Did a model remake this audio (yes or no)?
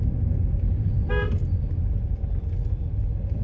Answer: no